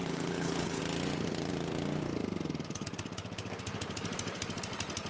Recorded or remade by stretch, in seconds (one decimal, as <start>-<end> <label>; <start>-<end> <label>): 0.0-0.8 remade; 0.8-5.1 recorded